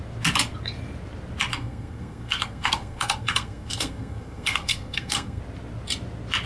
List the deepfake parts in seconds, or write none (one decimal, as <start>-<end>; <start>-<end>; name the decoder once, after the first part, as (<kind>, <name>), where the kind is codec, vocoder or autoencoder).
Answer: 1.5-5.4 (codec, SNAC)